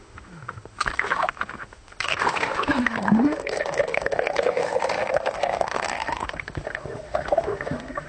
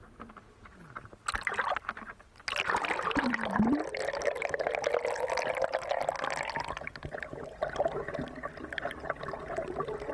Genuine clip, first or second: second